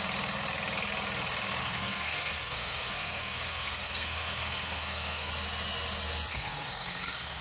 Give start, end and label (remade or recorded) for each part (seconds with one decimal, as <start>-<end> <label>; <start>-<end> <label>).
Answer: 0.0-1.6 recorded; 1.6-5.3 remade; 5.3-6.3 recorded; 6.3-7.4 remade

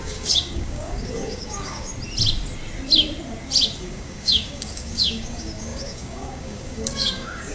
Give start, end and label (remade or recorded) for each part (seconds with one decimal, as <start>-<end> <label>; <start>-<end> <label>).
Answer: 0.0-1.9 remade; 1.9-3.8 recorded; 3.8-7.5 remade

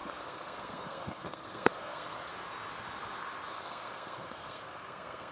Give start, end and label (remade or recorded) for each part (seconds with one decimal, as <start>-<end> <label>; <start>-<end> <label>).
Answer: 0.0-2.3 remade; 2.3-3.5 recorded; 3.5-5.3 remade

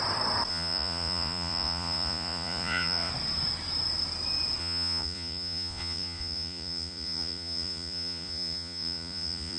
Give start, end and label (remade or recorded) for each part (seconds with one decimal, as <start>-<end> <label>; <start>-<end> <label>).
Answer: 0.0-0.5 recorded; 0.5-3.1 remade; 3.1-4.6 recorded; 4.6-9.6 remade